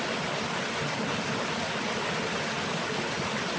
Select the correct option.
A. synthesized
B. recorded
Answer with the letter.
B